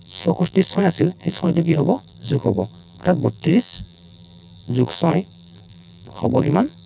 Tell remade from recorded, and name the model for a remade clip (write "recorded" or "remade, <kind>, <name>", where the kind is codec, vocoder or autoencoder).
remade, vocoder, BigVGAN v2